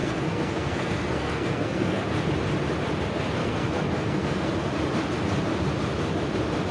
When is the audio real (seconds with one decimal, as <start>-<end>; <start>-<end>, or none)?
2.0-3.4; 4.5-6.7